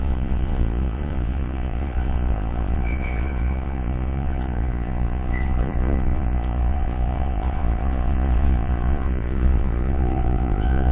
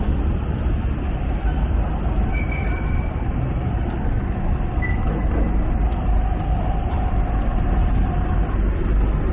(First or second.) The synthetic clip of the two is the first